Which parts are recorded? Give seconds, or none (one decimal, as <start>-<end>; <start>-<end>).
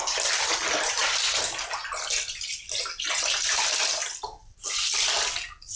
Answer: 0.0-5.8